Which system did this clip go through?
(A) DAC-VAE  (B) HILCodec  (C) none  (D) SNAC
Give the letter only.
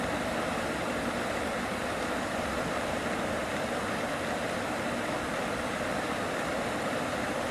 C